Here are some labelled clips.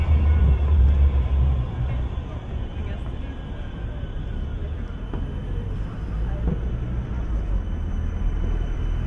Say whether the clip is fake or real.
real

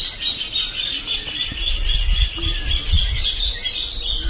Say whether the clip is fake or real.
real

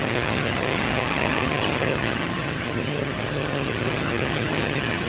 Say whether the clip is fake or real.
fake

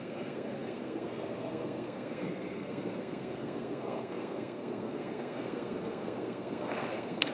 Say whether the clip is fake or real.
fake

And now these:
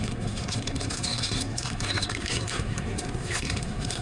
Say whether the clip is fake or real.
fake